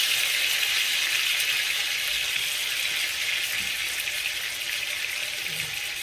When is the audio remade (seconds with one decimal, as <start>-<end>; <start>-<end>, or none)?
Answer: none